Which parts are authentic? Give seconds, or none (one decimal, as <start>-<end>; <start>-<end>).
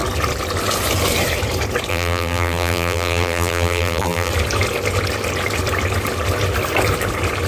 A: 0.0-1.9; 4.3-7.5